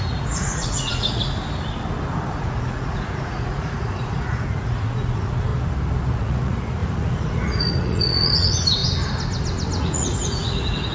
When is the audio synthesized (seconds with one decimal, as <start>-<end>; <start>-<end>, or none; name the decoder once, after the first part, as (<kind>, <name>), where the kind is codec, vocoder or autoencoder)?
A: 0.0-1.4 (vocoder, Vocos); 2.4-5.5; 6.1-8.8; 9.8-10.9